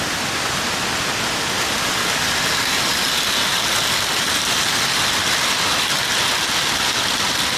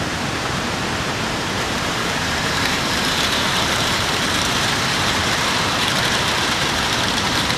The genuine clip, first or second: first